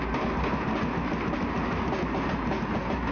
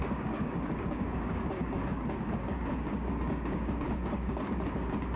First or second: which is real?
first